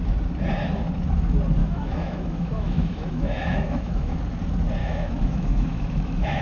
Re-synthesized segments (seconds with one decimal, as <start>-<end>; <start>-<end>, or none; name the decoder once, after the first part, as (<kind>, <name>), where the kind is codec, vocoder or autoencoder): 1.6-4.2 (autoencoder, DAC-VAE); 4.8-6.4